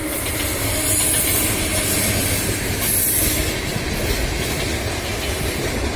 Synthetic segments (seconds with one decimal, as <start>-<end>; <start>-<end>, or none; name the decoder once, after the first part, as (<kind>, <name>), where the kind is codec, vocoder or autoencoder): 0.0-2.1 (vocoder, BigVGAN v2)